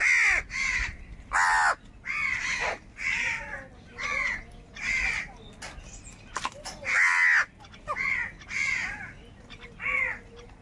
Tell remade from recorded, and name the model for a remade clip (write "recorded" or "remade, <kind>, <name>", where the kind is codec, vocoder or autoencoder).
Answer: recorded